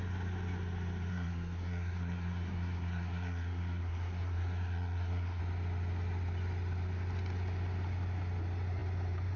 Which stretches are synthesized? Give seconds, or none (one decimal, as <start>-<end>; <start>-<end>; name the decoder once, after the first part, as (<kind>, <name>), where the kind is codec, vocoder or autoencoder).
1.1-5.4 (codec, SNAC)